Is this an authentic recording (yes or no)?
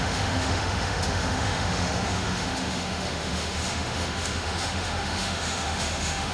no